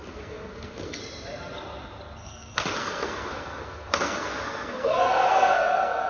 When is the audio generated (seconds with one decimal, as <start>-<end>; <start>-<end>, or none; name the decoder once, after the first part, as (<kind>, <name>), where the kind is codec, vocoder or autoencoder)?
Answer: 0.0-1.0 (codec, SNAC); 2.2-6.1